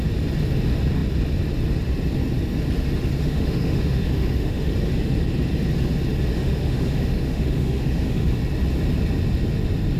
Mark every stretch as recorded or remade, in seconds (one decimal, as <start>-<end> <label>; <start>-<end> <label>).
0.0-3.2 recorded; 3.2-4.7 remade; 4.7-6.3 recorded; 6.3-8.4 remade; 8.4-10.0 recorded